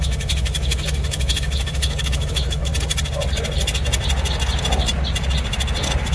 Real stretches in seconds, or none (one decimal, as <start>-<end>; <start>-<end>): 2.7-6.1